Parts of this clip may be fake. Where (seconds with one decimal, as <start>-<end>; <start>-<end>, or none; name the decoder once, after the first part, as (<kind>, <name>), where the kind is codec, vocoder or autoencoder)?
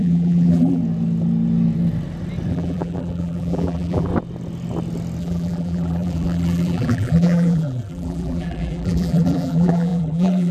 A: 0.0-0.8 (vocoder, BigVGAN v2); 2.5-4.1; 5.2-10.5